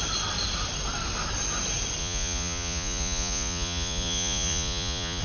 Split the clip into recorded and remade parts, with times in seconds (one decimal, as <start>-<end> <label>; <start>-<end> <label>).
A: 0.0-2.0 recorded; 2.0-5.2 remade